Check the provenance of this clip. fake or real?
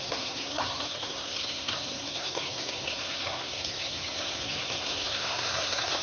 fake